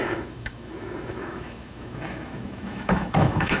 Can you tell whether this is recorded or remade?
remade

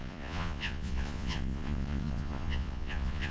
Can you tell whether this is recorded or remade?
remade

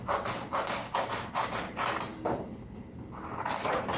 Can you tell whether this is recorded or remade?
recorded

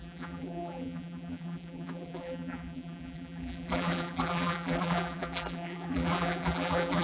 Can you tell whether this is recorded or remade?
remade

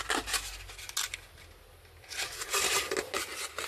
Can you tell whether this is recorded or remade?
recorded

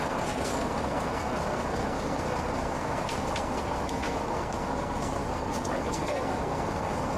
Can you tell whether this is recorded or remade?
remade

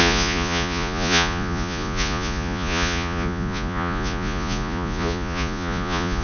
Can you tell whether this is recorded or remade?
remade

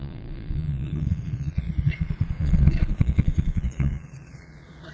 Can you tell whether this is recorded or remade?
remade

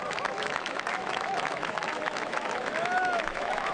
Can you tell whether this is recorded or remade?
remade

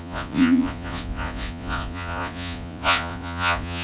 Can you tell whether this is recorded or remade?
remade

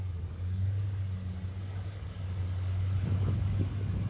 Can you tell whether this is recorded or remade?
remade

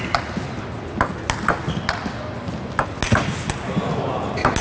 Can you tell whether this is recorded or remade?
recorded